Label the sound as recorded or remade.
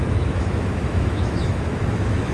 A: remade